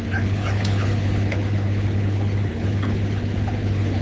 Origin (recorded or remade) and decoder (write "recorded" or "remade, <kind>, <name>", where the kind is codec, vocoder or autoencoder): remade, codec, HILCodec